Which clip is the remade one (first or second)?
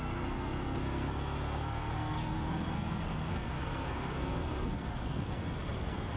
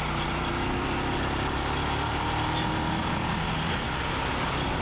first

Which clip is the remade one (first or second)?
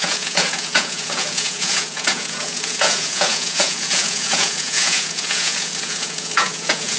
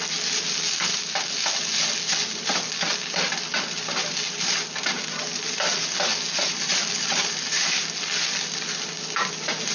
first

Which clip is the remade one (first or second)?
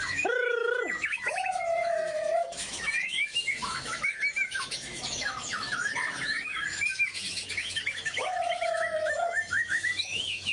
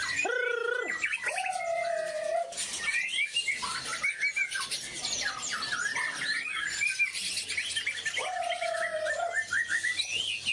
first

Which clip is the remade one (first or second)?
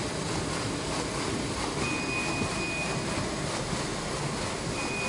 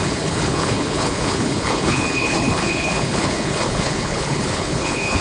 second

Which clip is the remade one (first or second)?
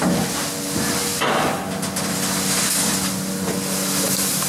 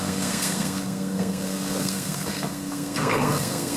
second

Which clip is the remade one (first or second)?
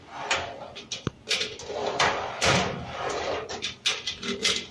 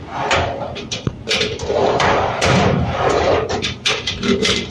second